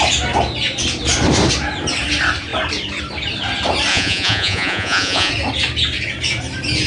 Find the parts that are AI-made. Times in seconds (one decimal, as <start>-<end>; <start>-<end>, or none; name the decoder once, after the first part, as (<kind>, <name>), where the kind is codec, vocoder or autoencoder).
3.9-5.3 (vocoder, Vocos)